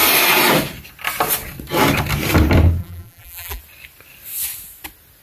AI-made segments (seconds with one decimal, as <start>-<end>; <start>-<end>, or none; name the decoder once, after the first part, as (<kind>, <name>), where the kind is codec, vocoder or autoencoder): 2.8-3.6 (vocoder, BigVGAN v2)